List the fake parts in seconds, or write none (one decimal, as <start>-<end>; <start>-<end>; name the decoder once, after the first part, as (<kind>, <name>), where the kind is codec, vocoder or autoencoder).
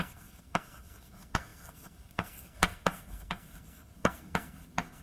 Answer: 0.0-5.0 (codec, SNAC)